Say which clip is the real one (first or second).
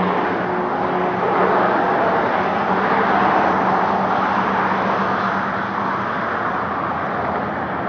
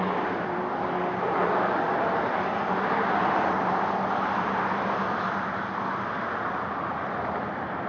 first